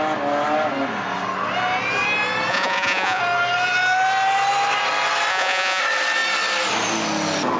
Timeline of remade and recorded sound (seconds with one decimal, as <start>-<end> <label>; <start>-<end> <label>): 0.0-2.5 recorded; 2.5-3.2 remade; 3.2-5.3 recorded; 5.3-5.8 remade; 5.8-7.6 recorded